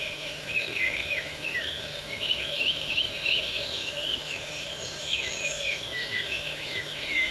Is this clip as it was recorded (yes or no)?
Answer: no